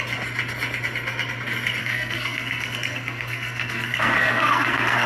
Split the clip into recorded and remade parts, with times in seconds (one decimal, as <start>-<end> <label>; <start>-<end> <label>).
0.0-1.8 recorded; 1.8-5.1 remade